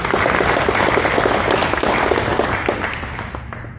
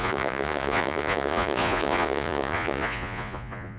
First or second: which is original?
first